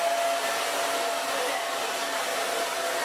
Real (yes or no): yes